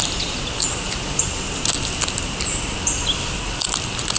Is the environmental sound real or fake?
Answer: real